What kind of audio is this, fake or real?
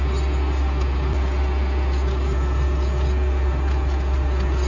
real